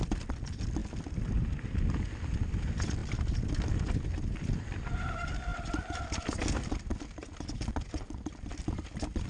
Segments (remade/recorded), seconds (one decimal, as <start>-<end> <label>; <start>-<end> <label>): 0.0-9.3 recorded